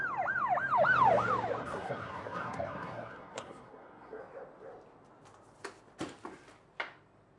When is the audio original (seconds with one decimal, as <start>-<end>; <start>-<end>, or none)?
0.0-1.6; 4.2-7.4